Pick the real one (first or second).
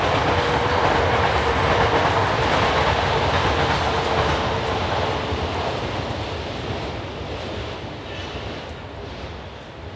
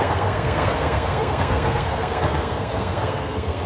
first